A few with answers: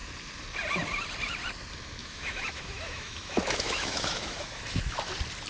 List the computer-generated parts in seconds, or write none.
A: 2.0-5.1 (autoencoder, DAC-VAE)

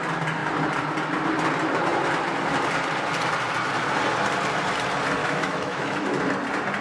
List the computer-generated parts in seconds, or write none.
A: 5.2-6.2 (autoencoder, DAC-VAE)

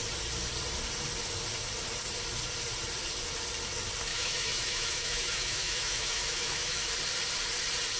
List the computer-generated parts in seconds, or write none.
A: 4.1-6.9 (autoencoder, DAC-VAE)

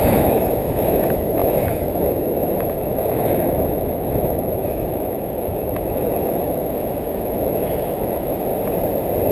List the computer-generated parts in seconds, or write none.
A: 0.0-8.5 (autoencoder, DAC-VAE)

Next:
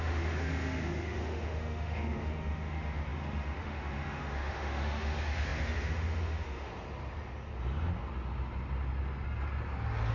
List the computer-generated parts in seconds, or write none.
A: 0.0-6.7 (autoencoder, DAC-VAE)